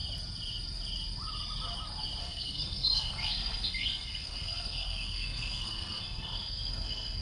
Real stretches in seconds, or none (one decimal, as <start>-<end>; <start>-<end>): 0.0-2.2